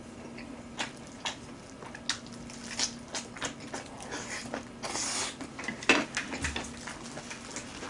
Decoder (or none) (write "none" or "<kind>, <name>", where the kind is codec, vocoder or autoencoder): none